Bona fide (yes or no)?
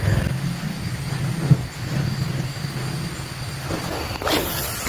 yes